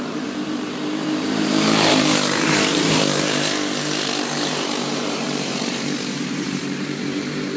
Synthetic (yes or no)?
yes